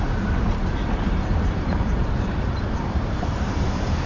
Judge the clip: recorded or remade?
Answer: remade